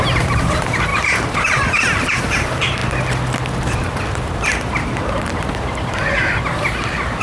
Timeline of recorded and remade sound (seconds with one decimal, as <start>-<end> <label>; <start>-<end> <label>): 0.0-2.8 remade; 2.8-4.1 recorded; 4.1-7.2 remade